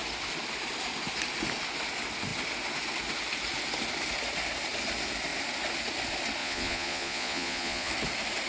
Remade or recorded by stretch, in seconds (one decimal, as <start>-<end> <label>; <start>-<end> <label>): 0.0-6.4 recorded; 6.4-7.9 remade; 7.9-8.5 recorded